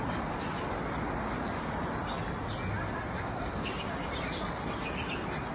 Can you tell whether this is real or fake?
real